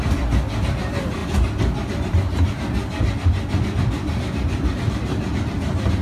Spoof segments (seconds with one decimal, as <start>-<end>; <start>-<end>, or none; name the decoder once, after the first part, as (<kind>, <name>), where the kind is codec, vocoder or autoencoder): none